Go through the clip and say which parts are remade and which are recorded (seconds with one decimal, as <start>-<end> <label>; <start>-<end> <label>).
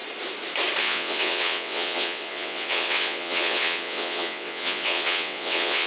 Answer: 0.0-0.8 recorded; 0.8-5.9 remade